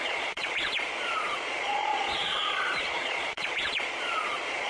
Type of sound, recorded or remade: remade